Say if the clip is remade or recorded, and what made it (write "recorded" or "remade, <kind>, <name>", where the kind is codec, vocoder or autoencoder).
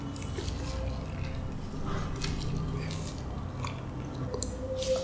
recorded